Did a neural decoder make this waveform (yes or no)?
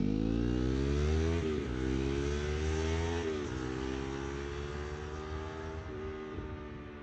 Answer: no